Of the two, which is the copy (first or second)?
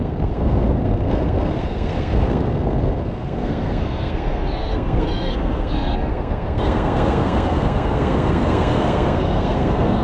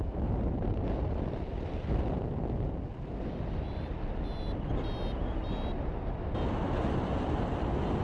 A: first